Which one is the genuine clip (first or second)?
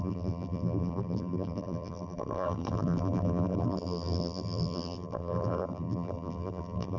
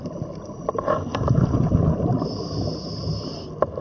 second